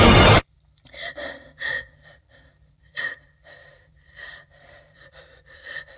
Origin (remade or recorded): remade